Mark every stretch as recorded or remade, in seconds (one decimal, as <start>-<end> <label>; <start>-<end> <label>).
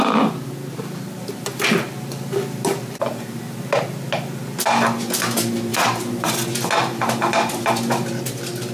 0.0-5.7 recorded; 5.7-6.3 remade; 6.3-8.7 recorded